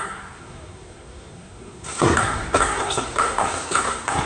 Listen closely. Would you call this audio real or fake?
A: fake